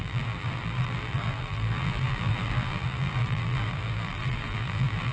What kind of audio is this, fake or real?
fake